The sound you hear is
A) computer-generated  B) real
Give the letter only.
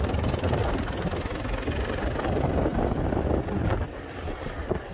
B